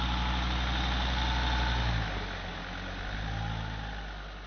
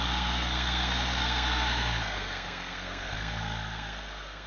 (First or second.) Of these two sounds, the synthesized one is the second